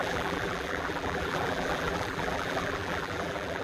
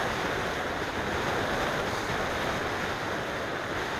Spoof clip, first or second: first